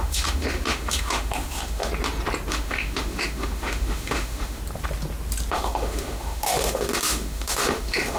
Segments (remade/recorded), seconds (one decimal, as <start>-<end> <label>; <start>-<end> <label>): 0.0-1.9 remade; 1.9-2.5 recorded; 2.5-4.6 remade; 4.6-5.5 recorded; 5.5-8.2 remade